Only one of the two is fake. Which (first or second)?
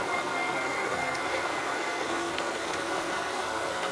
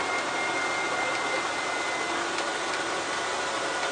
first